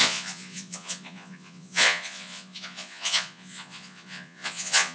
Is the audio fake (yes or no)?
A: yes